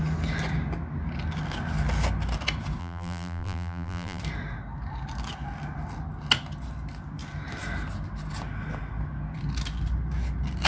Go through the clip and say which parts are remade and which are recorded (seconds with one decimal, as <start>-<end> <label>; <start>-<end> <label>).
0.0-2.8 recorded; 2.8-4.2 remade; 4.2-10.7 recorded